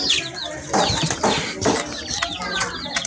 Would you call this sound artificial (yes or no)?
yes